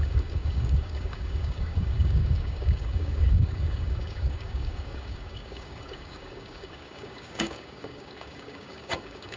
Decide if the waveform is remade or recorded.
remade